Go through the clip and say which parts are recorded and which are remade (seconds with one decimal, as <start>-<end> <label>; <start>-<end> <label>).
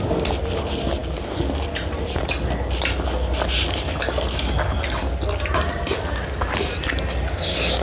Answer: 0.0-7.8 recorded